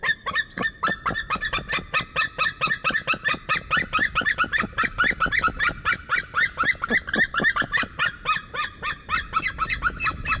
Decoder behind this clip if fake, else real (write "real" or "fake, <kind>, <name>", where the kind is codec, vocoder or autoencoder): real